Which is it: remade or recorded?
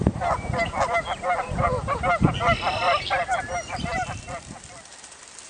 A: recorded